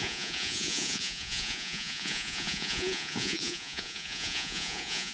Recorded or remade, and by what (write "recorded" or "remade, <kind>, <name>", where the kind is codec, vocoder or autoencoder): remade, vocoder, Vocos